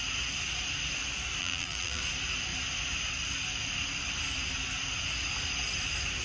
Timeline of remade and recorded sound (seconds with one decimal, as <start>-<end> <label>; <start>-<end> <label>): 0.0-1.4 recorded; 1.4-2.0 remade; 2.0-6.2 recorded